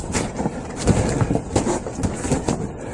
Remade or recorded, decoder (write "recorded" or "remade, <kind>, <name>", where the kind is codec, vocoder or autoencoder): recorded